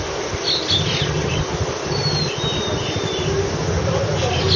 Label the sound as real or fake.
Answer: real